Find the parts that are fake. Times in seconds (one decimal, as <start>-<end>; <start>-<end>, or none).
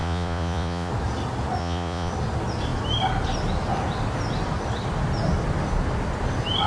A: 0.0-0.9; 1.6-2.1